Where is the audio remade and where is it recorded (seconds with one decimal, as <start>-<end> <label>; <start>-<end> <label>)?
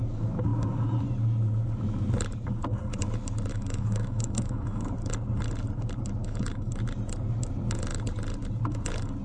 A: 0.0-3.5 recorded; 3.5-4.9 remade; 4.9-6.2 recorded; 6.2-6.7 remade; 6.7-9.2 recorded